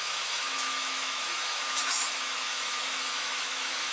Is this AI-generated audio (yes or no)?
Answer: yes